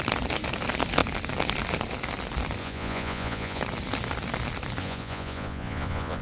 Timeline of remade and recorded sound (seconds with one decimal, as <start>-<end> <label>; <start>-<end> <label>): 0.0-2.6 recorded; 2.6-3.6 remade; 3.6-4.8 recorded; 4.8-6.2 remade